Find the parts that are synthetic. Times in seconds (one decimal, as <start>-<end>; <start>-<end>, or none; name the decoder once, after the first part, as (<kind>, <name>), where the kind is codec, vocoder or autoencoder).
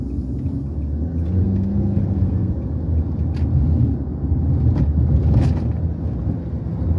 1.4-2.5 (codec, SNAC)